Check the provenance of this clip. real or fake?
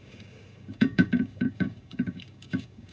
fake